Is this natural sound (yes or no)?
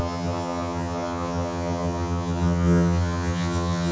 no